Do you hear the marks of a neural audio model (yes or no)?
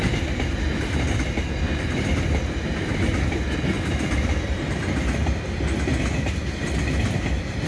no